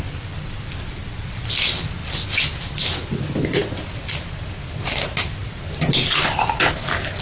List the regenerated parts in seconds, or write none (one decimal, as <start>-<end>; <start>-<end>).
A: none